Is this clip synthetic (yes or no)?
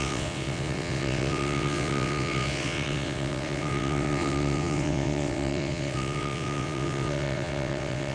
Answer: yes